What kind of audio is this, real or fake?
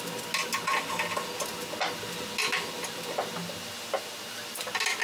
real